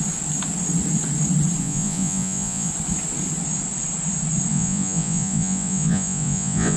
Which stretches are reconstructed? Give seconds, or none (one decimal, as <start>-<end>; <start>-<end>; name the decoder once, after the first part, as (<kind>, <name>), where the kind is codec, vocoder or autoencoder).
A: 1.6-2.7 (vocoder, Vocos); 4.5-6.8

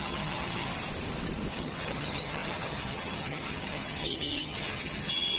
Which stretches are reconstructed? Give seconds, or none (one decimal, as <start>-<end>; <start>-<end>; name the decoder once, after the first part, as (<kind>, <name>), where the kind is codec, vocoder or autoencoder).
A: 0.0-0.7 (vocoder, HiFi-GAN); 1.5-5.4

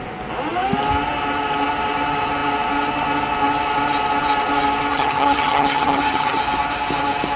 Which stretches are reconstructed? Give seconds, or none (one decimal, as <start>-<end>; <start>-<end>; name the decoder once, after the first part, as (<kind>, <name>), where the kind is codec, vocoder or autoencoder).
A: 4.9-6.4 (vocoder, HiFi-GAN)

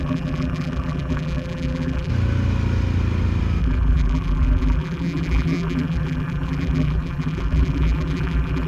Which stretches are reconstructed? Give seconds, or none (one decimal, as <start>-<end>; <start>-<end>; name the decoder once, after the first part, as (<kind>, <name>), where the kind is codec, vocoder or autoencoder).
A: 0.0-2.1 (vocoder, BigVGAN v2); 3.6-8.7

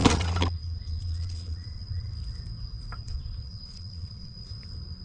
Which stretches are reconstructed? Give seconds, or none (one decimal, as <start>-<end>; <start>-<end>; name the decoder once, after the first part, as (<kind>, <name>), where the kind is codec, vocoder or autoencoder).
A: 0.0-2.1 (vocoder, Vocos); 3.0-4.5